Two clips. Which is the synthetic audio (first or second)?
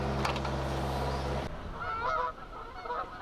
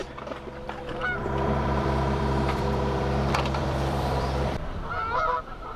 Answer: second